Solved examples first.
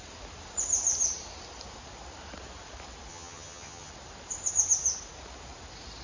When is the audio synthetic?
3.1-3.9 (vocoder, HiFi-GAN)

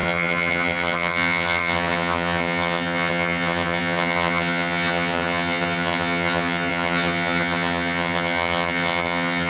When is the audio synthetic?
0.0-9.5 (vocoder, HiFi-GAN)

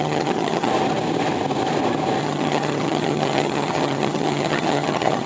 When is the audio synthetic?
0.0-0.7 (vocoder, HiFi-GAN); 2.2-5.3

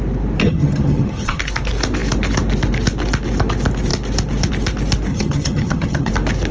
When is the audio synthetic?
0.4-1.4 (vocoder, HiFi-GAN); 5.1-6.1